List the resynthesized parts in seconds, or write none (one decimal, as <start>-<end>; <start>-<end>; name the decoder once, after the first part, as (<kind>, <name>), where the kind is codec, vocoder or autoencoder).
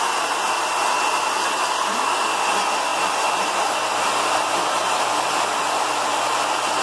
none